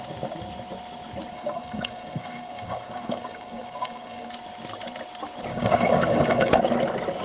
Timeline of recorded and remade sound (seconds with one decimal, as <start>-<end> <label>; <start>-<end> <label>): 0.0-1.3 recorded; 1.3-4.3 remade; 4.3-5.5 recorded; 5.5-6.6 remade; 6.6-7.2 recorded